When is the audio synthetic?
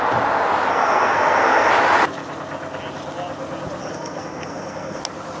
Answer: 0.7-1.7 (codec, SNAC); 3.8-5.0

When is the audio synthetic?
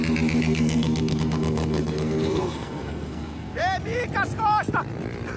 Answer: 0.4-3.6 (codec, SNAC)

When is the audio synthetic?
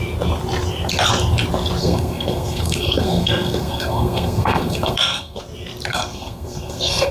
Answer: 1.8-5.4 (codec, SNAC); 5.9-7.1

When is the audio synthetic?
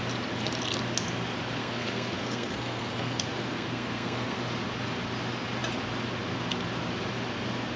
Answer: 1.6-4.4 (codec, SNAC)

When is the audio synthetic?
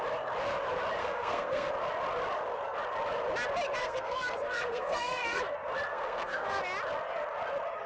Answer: 1.0-1.7 (codec, SNAC); 3.8-5.4; 5.9-6.6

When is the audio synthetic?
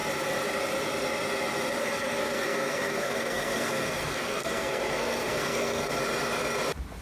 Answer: 1.8-6.0 (codec, SNAC)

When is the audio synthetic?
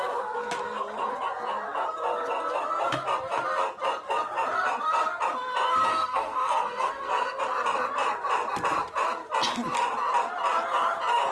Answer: 5.9-7.4 (codec, SNAC)